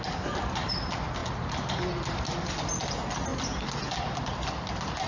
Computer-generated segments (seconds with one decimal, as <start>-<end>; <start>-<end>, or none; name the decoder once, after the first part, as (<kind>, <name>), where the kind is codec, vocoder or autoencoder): none